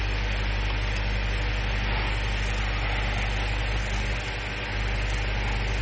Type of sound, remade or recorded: recorded